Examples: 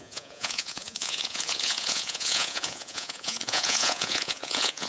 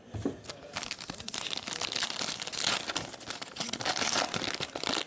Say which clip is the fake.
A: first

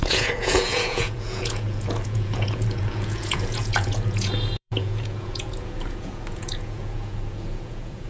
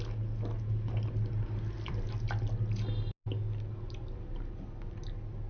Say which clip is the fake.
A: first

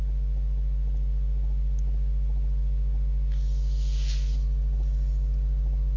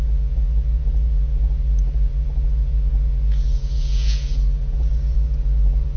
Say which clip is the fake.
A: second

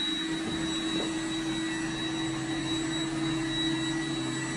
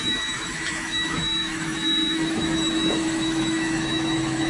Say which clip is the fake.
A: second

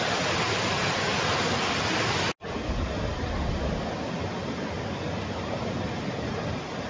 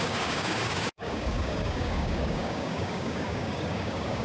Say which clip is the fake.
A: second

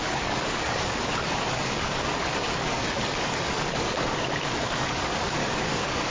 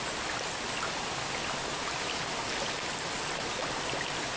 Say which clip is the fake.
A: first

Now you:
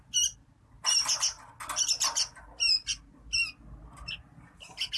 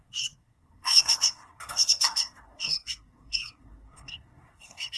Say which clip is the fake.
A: second